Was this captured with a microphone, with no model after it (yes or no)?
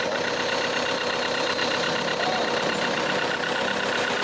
yes